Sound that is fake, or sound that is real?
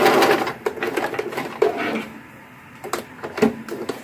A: real